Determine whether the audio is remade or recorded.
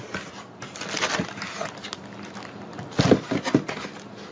recorded